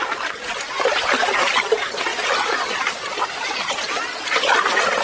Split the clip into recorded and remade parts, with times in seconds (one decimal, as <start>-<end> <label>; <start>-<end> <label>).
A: 0.0-2.1 recorded; 2.1-4.4 remade; 4.4-5.0 recorded